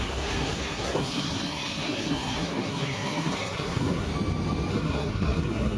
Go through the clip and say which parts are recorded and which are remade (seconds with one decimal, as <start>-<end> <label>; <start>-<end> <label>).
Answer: 0.0-4.1 remade; 4.1-4.7 recorded; 4.7-5.8 remade